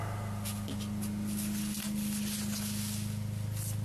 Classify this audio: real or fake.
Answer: real